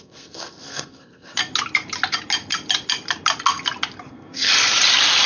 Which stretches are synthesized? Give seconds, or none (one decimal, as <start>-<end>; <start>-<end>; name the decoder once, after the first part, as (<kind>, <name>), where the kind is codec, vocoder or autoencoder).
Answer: 0.0-1.4 (codec, SNAC); 4.1-4.5